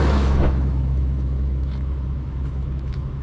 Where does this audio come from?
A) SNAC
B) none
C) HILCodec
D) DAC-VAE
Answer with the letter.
D